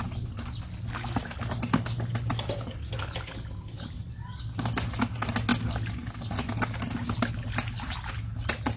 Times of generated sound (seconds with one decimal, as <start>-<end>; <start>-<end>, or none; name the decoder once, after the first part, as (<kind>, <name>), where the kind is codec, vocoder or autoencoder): none